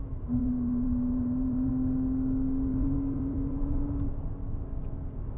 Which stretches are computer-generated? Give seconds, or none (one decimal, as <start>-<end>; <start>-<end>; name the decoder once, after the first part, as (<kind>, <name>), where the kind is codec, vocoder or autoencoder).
0.4-1.7 (vocoder, BigVGAN v2); 2.7-4.1